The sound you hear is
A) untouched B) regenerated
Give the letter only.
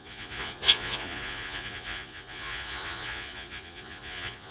B